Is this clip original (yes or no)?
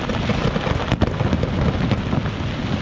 yes